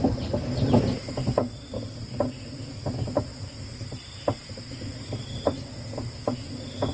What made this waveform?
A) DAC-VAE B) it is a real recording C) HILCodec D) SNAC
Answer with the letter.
B